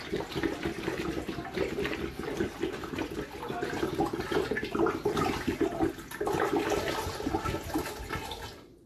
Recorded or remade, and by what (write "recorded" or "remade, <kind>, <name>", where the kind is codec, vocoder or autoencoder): recorded